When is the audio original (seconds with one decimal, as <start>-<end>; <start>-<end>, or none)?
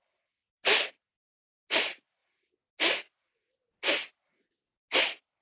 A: 0.0-5.4